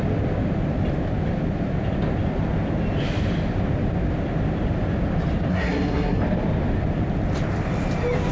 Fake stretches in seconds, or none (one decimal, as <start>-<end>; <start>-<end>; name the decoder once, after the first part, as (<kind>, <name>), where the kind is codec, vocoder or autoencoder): 5.5-6.2 (codec, SNAC)